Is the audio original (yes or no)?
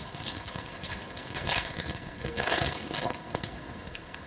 no